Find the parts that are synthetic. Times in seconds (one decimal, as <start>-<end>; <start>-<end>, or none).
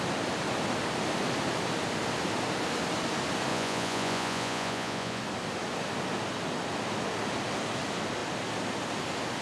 3.5-5.2